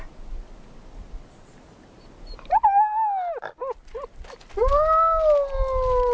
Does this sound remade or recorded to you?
recorded